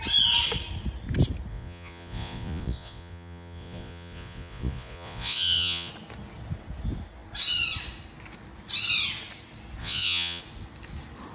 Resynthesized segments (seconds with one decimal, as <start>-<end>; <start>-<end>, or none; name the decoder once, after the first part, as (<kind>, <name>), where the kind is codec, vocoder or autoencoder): 1.5-5.9 (vocoder, Vocos); 9.8-10.4